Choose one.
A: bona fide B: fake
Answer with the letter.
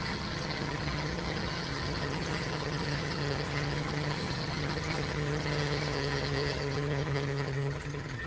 B